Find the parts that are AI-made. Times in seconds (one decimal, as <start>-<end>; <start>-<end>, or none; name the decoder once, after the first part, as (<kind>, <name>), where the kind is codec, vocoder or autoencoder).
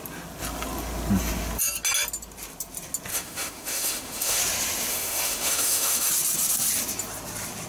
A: 3.1-4.4 (autoencoder, DAC-VAE); 4.9-6.1